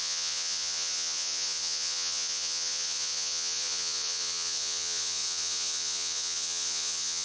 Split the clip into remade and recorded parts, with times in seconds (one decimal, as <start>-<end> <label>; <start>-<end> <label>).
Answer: 0.0-7.2 remade